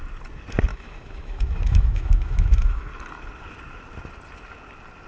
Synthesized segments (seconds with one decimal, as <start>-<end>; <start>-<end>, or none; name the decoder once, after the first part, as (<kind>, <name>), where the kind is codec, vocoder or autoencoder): 0.7-2.9 (autoencoder, DAC-VAE)